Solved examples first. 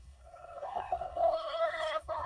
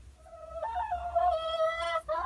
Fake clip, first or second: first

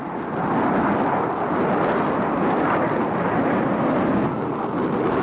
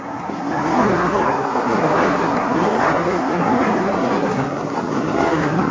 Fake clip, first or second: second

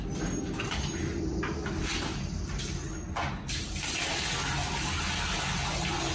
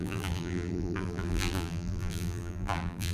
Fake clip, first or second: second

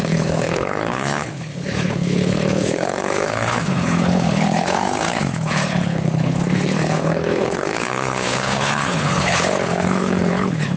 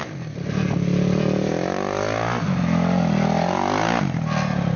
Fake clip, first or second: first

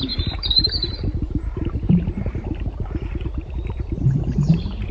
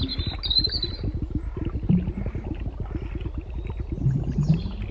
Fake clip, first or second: first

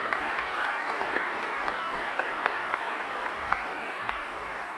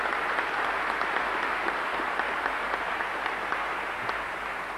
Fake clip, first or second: first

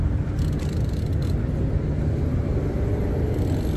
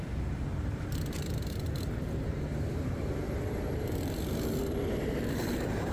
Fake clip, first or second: second